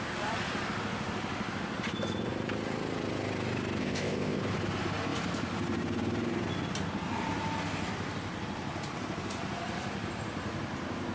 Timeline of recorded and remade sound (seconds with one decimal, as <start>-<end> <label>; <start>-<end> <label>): 0.0-3.8 recorded; 3.8-4.4 remade; 4.4-11.1 recorded